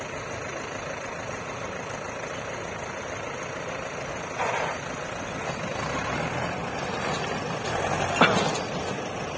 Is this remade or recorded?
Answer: recorded